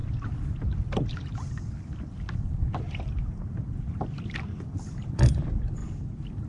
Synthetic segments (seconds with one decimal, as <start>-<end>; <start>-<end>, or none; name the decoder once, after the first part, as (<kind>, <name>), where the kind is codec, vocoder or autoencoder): none